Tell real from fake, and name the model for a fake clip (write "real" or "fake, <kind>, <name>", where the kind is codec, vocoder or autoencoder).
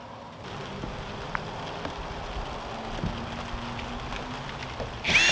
real